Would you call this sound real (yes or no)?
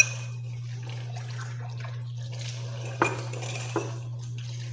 yes